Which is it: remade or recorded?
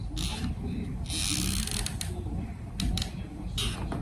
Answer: recorded